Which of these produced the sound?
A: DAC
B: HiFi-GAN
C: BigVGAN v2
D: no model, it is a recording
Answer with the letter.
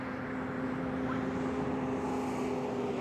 D